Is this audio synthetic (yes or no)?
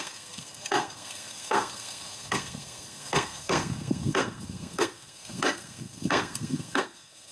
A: yes